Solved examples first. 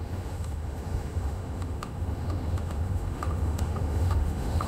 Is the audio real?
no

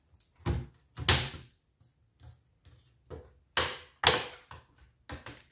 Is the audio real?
yes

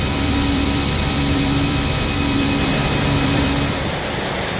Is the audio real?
no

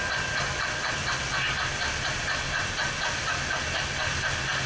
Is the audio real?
yes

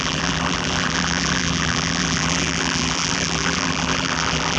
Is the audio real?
no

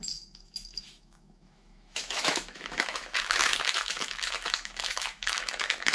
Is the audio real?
no